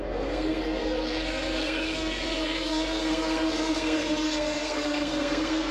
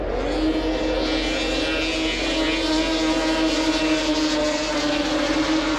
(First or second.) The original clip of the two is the second